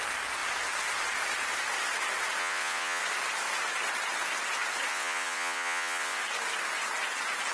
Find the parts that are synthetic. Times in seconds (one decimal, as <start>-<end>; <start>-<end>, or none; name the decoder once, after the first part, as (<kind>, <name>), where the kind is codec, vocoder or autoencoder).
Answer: 2.4-3.0 (vocoder, WaveNeXt); 4.9-6.2